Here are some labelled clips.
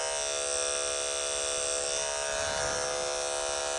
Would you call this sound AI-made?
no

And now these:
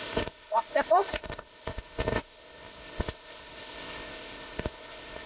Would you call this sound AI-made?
yes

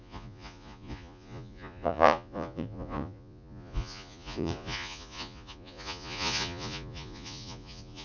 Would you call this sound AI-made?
yes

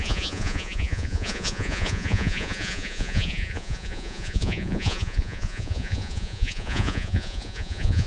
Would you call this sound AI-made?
yes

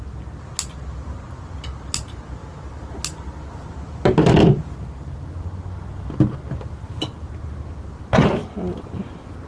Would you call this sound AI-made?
no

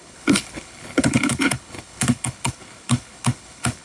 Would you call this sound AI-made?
yes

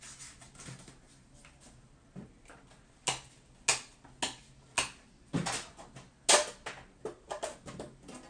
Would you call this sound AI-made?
no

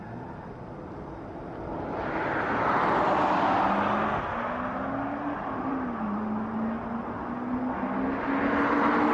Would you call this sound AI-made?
no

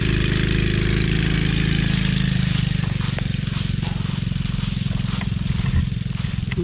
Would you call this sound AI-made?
no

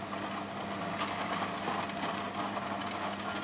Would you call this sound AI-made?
no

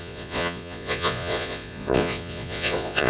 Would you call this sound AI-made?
yes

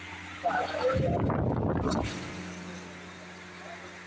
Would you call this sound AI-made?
no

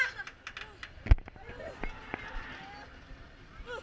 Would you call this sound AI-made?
no